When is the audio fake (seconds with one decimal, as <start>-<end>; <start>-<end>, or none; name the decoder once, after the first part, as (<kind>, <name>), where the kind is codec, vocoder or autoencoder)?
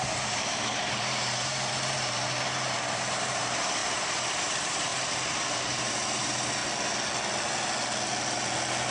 0.0-6.6 (vocoder, BigVGAN v2)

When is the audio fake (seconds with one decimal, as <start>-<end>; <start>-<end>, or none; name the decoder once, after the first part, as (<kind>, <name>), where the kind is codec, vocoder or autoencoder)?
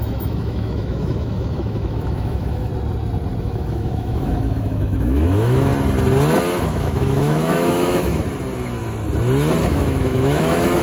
0.0-2.7 (autoencoder, DAC-VAE); 3.4-5.7; 6.6-8.1; 9.7-10.8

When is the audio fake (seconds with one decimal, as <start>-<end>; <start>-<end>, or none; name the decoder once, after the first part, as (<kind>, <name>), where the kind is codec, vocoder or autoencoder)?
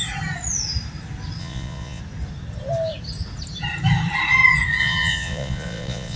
1.4-2.0 (vocoder, Vocos); 4.8-6.2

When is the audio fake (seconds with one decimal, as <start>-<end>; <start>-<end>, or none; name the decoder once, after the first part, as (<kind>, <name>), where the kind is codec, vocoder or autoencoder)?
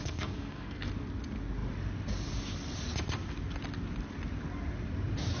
0.0-0.9 (codec, SNAC)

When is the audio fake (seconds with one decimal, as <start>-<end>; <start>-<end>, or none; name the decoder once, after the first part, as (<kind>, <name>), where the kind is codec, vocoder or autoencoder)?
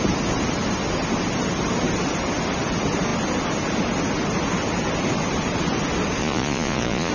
6.2-7.1 (vocoder, Vocos)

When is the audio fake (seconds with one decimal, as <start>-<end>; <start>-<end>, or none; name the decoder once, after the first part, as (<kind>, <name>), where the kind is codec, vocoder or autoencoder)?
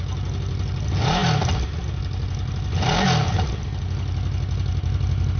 none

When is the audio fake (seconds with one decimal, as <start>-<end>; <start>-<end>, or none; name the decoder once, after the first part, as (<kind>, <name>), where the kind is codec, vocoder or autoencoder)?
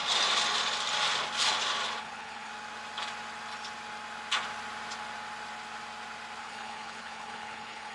2.0-2.5 (codec, HILCodec); 6.4-7.9